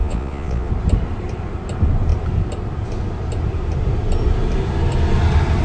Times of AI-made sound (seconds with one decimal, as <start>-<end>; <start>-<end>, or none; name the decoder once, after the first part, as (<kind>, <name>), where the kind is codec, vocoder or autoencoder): 0.0-0.7 (vocoder, Vocos)